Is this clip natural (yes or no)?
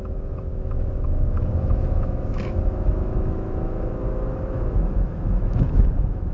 no